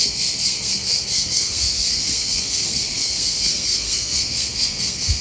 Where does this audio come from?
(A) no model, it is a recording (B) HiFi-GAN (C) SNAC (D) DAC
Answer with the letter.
C